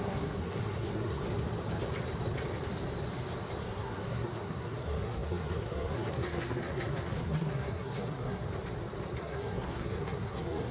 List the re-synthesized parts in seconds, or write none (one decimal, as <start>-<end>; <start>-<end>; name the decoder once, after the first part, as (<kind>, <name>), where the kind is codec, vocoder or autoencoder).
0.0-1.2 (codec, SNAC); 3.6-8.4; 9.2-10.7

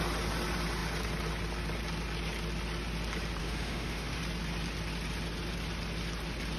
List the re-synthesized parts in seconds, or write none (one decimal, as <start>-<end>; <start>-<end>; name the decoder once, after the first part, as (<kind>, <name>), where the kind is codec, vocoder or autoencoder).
3.4-4.2 (autoencoder, DAC-VAE)

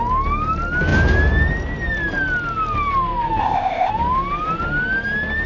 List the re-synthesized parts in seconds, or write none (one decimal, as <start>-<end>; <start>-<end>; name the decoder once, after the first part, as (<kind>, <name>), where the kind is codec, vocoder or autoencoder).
3.4-3.9 (codec, ZipCodec)

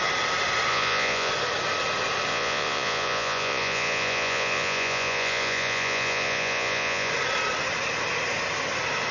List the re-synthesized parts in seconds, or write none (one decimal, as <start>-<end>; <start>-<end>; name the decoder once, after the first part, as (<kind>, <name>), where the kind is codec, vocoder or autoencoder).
0.7-1.3 (vocoder, Vocos); 2.3-7.1